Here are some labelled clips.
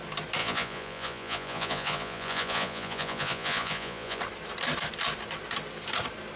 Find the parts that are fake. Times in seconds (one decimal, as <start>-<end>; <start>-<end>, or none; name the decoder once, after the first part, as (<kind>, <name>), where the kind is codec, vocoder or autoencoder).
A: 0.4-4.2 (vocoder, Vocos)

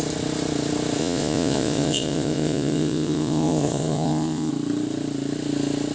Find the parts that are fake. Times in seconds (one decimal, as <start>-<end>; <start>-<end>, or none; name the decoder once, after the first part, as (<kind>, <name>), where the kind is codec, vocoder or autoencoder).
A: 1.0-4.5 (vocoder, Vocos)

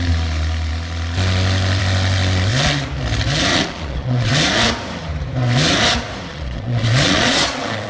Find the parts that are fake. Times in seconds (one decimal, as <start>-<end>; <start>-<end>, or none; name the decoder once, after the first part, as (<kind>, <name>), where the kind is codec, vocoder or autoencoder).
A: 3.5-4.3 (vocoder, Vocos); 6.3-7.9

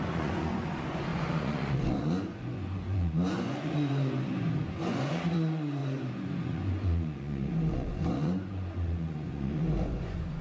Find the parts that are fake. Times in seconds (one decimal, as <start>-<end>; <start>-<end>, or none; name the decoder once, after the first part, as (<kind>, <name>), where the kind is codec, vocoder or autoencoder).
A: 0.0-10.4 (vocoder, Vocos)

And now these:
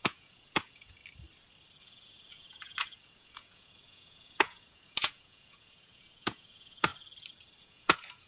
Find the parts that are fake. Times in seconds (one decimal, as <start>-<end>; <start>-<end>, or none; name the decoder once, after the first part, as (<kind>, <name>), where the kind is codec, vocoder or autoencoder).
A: 0.0-1.0 (vocoder, Vocos); 1.8-6.9; 7.6-8.3

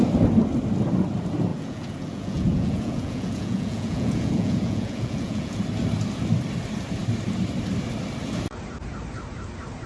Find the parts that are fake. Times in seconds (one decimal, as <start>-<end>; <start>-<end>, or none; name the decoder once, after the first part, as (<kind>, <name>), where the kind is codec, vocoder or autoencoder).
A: 1.5-5.6 (vocoder, Vocos)